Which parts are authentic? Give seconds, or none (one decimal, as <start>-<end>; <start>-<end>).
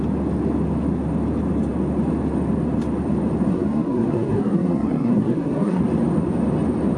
0.0-3.5; 5.8-7.0